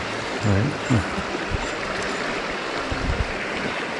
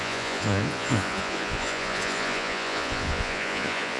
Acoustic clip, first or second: first